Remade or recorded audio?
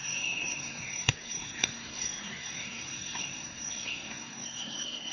remade